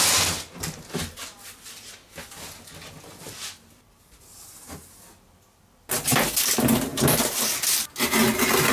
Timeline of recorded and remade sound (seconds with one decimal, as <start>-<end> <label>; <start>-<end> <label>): 0.0-8.7 recorded